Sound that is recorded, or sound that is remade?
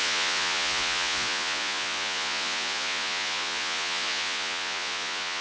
remade